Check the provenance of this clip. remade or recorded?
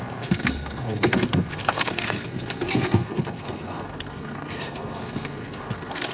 remade